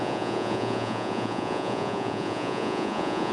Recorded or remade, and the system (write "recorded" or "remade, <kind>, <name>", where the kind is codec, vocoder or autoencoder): remade, vocoder, Vocos